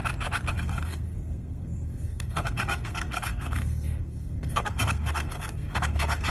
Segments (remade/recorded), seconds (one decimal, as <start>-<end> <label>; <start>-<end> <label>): 0.0-0.5 recorded; 0.5-6.3 remade